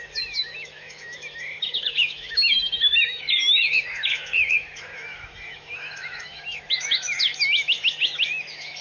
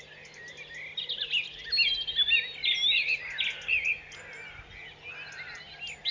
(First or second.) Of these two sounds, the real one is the second